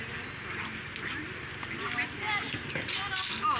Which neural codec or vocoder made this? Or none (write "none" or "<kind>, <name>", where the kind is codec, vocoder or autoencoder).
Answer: none